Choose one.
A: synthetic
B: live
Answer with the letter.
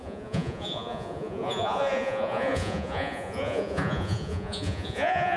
A